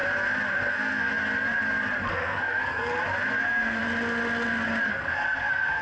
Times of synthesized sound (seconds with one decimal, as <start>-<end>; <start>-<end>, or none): 0.7-1.1; 2.1-2.9; 3.4-3.8; 4.9-5.8

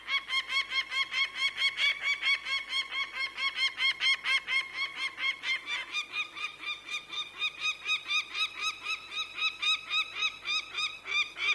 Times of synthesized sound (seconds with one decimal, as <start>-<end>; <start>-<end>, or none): none

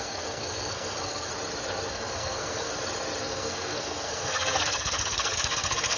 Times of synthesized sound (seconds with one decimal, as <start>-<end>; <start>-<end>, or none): 0.0-1.3; 1.9-2.7; 3.2-6.0

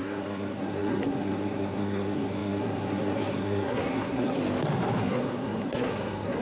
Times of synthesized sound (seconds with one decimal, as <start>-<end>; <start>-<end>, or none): 0.0-4.4; 5.0-6.4

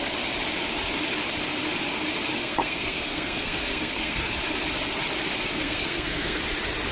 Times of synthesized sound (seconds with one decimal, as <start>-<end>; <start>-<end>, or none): 2.4-4.3; 5.5-6.4

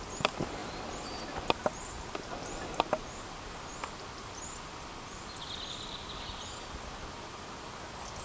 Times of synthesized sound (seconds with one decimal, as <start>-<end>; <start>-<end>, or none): none